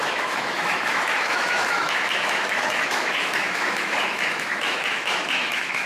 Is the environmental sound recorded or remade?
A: remade